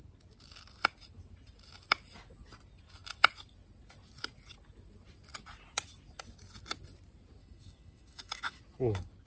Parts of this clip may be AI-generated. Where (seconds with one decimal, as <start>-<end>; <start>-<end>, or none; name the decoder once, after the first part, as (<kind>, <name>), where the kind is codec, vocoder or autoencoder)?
7.4-8.6 (autoencoder, DAC-VAE)